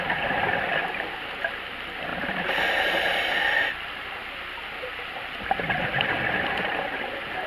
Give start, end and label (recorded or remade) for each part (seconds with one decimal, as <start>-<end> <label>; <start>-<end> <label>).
0.0-7.5 recorded